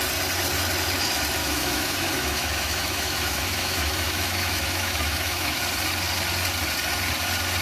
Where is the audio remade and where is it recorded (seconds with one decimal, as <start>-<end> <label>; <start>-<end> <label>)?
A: 0.0-1.4 recorded; 1.4-5.6 remade; 5.6-7.6 recorded